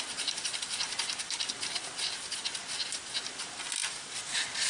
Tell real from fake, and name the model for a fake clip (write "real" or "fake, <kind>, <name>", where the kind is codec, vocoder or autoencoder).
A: real